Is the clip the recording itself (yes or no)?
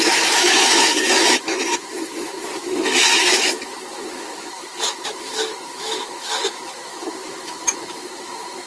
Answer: no